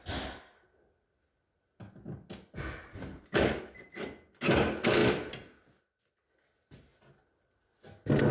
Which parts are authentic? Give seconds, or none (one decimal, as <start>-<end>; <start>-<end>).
0.0-2.9; 3.6-8.3